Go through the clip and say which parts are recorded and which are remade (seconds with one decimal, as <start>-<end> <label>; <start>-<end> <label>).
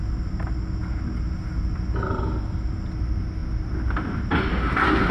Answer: 0.0-5.1 recorded